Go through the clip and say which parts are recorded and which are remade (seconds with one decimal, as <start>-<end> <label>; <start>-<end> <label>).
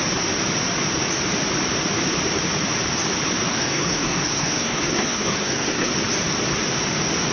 0.0-3.5 recorded; 3.5-5.9 remade; 5.9-7.3 recorded